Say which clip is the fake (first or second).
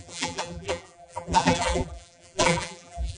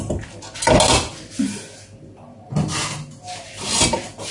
first